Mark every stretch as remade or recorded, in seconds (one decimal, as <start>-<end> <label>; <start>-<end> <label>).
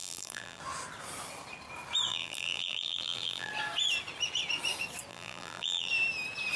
0.0-0.6 remade; 0.6-2.1 recorded; 2.1-3.5 remade; 3.5-5.1 recorded; 5.1-5.9 remade; 5.9-6.6 recorded